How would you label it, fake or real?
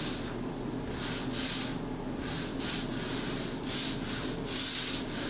real